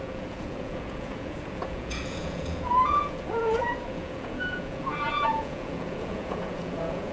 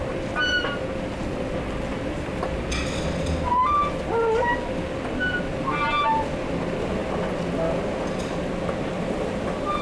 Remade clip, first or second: first